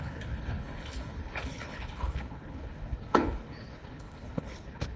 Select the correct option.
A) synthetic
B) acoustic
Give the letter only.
A